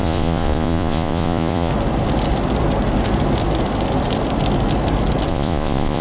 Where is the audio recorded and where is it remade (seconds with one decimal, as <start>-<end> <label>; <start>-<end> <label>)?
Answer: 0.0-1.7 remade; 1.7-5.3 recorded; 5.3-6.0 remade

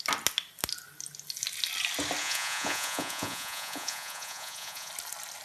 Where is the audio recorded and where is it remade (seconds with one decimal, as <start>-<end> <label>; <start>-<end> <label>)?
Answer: 0.0-2.2 recorded; 2.2-4.9 remade; 4.9-5.4 recorded

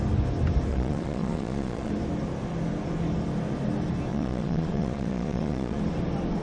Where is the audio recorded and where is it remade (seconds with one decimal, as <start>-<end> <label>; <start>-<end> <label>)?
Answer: 0.0-0.7 recorded; 0.7-1.9 remade; 1.9-4.1 recorded; 4.1-5.8 remade; 5.8-6.4 recorded

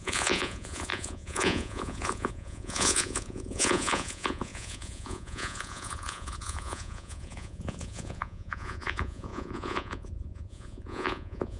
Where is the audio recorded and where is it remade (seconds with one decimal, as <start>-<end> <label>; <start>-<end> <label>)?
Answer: 0.0-11.6 remade

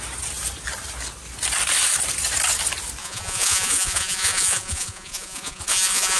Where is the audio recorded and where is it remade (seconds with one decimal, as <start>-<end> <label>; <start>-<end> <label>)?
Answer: 0.0-3.0 recorded; 3.0-6.2 remade

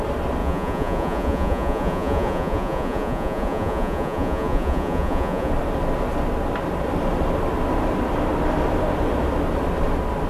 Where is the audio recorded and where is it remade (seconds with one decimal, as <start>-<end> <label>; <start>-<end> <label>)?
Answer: 0.0-0.4 recorded; 0.4-5.5 remade; 5.5-10.3 recorded